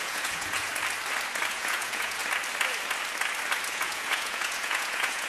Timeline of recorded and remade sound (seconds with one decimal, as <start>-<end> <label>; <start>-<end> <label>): 0.0-0.7 remade; 0.7-1.5 recorded; 1.5-2.2 remade; 2.2-3.7 recorded; 3.7-5.3 remade